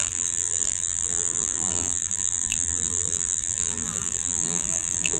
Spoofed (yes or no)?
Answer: yes